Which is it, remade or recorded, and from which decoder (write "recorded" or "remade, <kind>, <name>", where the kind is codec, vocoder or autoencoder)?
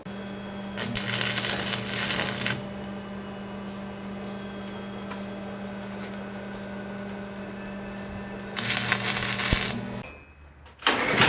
recorded